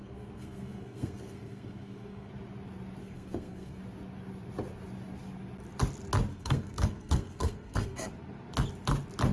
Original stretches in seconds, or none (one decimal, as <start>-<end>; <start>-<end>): 2.3-3.0; 3.8-6.3; 8.1-9.3